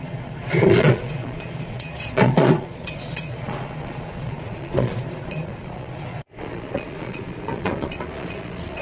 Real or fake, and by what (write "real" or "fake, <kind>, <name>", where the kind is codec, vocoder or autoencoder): fake, vocoder, Vocos